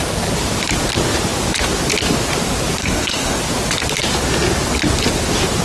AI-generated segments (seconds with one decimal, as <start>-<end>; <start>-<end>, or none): 2.8-3.4